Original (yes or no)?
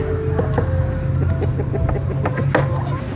yes